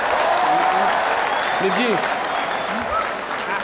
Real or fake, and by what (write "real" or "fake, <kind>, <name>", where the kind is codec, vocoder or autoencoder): real